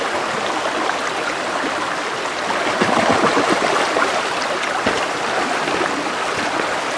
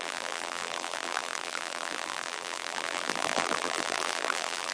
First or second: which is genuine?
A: first